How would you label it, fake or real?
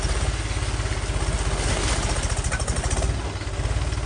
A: real